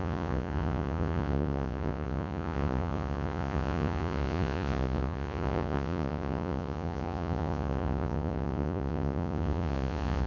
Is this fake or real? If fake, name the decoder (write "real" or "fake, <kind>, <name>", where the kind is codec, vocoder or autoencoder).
fake, vocoder, Vocos